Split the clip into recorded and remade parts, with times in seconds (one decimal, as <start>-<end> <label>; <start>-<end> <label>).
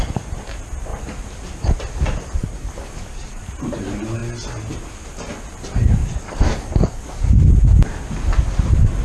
0.0-2.4 recorded; 2.4-3.4 remade; 3.4-6.0 recorded; 6.0-7.5 remade; 7.5-9.0 recorded